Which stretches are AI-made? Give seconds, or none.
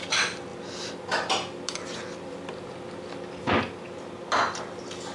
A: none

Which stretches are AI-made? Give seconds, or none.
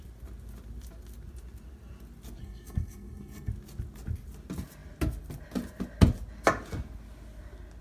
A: 2.4-3.5 (codec, SNAC)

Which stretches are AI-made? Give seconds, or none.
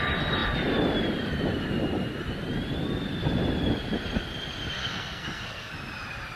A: 4.8-5.7 (codec, SNAC)